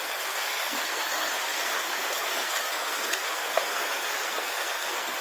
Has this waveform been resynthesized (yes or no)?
yes